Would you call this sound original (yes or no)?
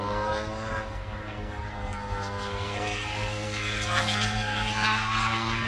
no